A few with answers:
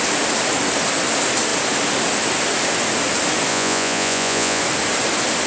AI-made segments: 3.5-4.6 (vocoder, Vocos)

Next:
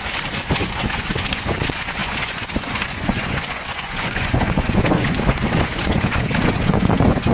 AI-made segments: 0.0-7.3 (vocoder, Vocos)

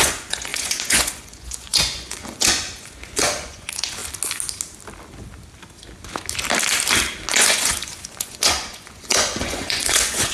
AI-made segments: 0.0-4.0 (vocoder, Vocos); 7.3-10.3

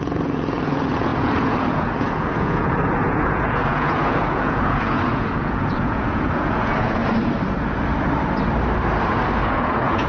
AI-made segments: 0.0-7.0 (vocoder, Vocos); 9.5-10.1